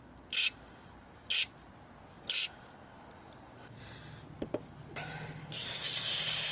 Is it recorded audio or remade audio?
recorded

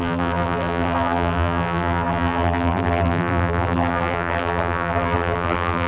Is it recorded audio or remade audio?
remade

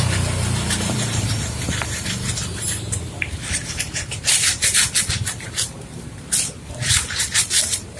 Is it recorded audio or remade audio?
remade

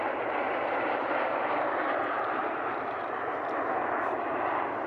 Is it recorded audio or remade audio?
remade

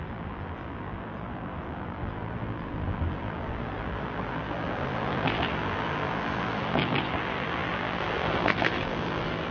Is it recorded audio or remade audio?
remade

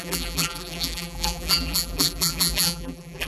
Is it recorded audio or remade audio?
remade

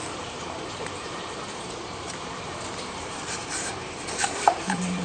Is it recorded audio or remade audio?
remade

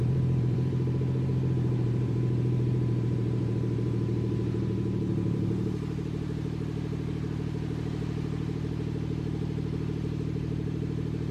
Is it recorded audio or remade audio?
remade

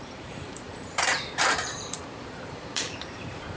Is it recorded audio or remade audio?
remade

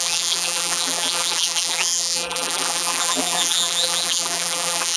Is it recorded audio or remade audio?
remade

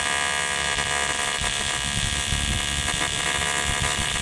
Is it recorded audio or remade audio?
recorded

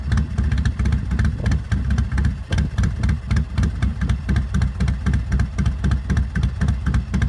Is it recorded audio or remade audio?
recorded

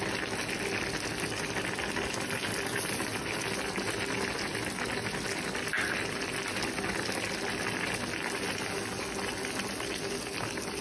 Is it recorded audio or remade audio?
recorded